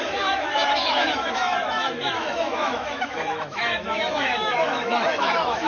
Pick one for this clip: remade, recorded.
remade